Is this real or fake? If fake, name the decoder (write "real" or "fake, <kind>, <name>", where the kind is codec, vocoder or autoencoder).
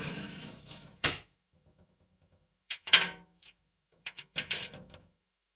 fake, autoencoder, DAC-VAE